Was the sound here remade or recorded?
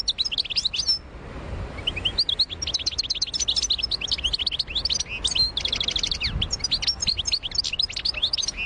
recorded